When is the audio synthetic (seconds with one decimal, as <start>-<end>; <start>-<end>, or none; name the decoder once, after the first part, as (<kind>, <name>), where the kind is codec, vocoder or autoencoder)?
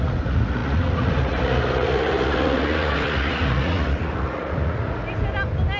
0.0-5.0 (vocoder, Vocos)